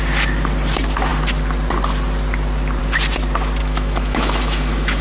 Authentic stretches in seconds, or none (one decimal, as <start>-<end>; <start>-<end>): 0.0-3.6